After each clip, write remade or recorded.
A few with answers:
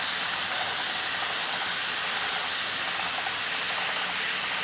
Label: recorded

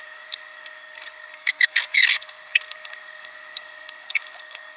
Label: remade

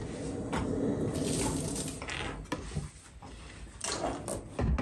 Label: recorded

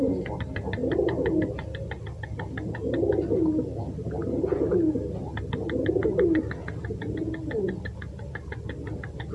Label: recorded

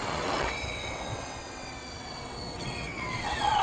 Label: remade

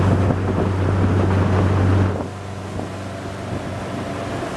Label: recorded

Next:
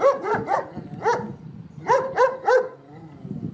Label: recorded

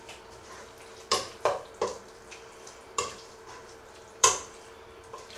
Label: remade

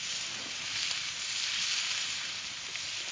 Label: recorded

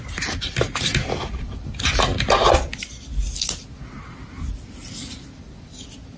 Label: recorded